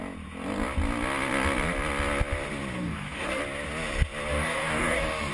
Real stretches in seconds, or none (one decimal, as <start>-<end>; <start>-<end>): 0.0-2.7; 3.4-4.3